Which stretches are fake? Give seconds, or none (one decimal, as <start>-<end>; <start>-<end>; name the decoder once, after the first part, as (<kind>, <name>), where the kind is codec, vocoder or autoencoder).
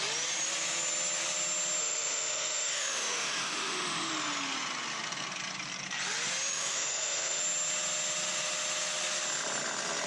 1.8-4.1 (autoencoder, DAC-VAE); 6.5-7.4